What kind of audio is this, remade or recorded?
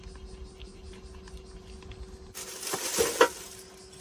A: recorded